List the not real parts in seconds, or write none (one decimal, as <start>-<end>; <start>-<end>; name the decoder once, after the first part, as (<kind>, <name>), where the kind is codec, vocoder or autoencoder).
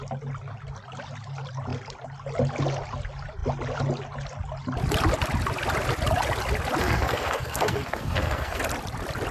6.8-8.6 (codec, SNAC)